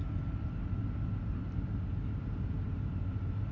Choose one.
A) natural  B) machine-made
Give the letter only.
A